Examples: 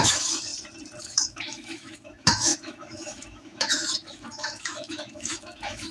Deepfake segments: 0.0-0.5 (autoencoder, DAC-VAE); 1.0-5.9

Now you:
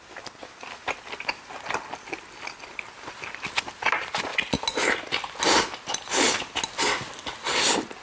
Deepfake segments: none

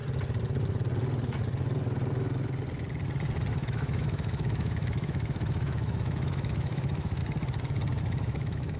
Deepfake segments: 3.5-7.2 (autoencoder, DAC-VAE); 8.0-8.8

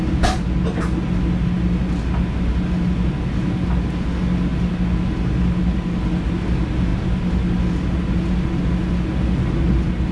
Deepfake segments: none

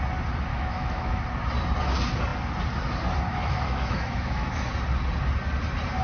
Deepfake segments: 0.5-1.2 (autoencoder, DAC-VAE); 3.3-4.7

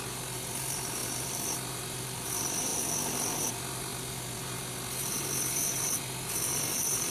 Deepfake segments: none

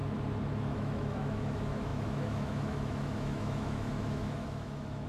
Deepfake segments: 0.6-5.1 (autoencoder, DAC-VAE)

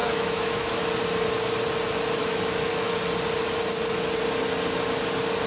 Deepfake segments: 0.0-0.9 (autoencoder, DAC-VAE); 2.2-3.0